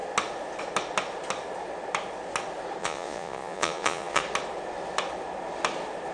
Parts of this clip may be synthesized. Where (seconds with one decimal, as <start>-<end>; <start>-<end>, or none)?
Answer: 2.8-4.2